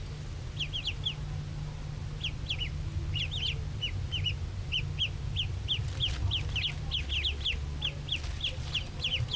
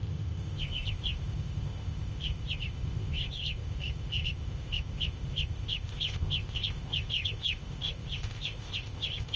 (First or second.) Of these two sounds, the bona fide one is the first